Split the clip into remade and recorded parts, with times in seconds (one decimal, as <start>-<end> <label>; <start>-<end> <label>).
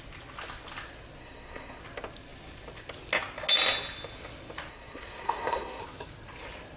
0.0-1.2 recorded; 1.2-1.8 remade; 1.8-4.7 recorded; 4.7-5.8 remade; 5.8-6.8 recorded